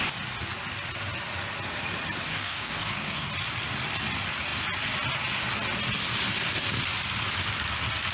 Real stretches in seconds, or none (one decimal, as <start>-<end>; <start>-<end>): 0.0-2.3; 3.3-8.1